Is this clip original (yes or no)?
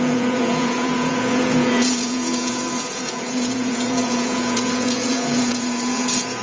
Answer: no